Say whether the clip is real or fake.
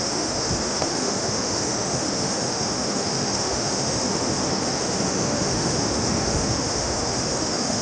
fake